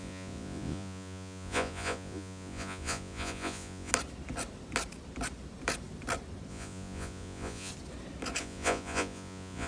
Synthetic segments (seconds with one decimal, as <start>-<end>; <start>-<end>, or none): 0.0-3.9; 6.5-7.7; 8.4-9.7